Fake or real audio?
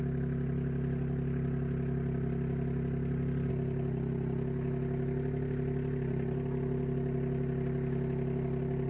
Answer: real